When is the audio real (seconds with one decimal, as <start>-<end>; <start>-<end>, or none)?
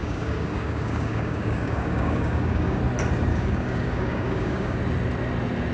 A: 2.8-3.3; 4.8-5.7